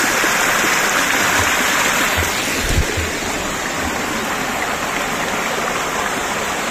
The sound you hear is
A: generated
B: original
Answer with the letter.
B